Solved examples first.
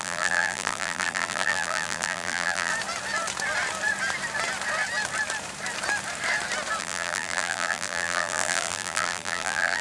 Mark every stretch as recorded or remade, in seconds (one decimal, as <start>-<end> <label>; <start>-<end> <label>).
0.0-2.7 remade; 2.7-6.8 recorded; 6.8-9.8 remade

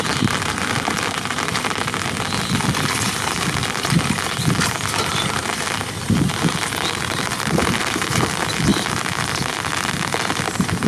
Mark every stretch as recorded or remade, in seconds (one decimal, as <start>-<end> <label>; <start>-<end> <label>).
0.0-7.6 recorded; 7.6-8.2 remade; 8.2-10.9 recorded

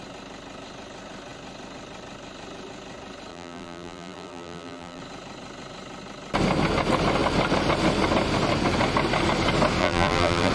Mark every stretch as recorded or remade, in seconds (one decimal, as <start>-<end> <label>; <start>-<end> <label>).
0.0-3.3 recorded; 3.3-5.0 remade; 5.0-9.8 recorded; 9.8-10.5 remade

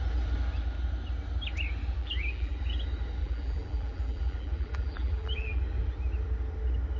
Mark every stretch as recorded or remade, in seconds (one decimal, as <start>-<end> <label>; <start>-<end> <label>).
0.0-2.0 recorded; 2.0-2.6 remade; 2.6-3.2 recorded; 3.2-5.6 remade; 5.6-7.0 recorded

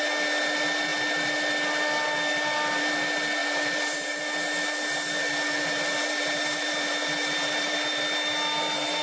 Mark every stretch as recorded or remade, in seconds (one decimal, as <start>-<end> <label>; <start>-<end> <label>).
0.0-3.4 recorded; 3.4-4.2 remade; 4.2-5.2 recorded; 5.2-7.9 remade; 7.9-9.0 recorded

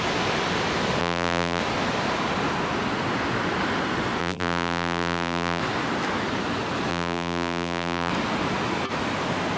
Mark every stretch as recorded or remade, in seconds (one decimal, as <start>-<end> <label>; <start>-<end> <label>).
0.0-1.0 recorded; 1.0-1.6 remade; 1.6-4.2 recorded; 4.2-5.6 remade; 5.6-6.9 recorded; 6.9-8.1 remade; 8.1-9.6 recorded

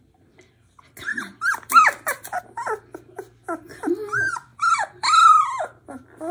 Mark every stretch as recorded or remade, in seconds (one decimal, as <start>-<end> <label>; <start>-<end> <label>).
0.0-1.1 recorded; 1.1-2.4 remade; 2.4-4.5 recorded; 4.5-5.3 remade; 5.3-6.3 recorded